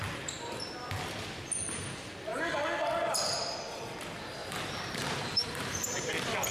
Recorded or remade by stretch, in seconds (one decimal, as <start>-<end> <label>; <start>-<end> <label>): 0.0-4.4 recorded; 4.4-6.1 remade; 6.1-6.5 recorded